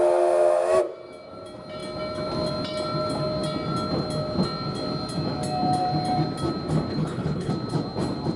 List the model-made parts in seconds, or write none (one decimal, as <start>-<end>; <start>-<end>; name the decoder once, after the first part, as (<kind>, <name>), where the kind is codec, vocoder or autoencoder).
6.9-7.5 (codec, HILCodec)